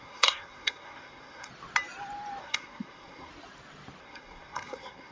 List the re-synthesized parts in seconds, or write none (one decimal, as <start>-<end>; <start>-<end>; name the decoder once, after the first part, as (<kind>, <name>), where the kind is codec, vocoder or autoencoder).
0.0-1.5 (codec, SNAC); 2.4-3.3; 4.0-5.1